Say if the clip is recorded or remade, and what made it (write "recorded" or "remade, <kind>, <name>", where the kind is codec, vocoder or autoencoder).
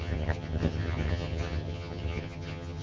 remade, vocoder, HiFi-GAN